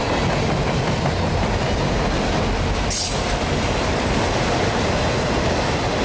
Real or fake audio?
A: real